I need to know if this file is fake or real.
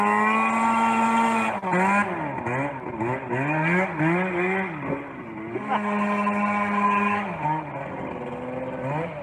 real